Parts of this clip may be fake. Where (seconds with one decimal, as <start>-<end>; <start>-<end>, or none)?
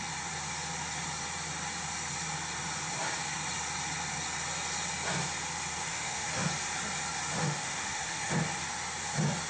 5.8-6.5; 7.4-8.3